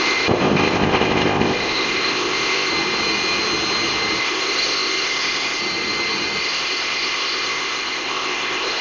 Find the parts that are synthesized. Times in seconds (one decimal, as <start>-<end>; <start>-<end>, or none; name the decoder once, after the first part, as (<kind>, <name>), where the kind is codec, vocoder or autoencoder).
0.0-2.7 (codec, ZipCodec); 4.2-5.6; 6.4-8.8